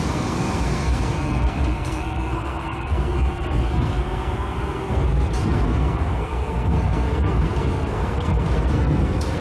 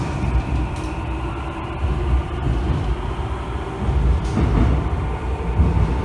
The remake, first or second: first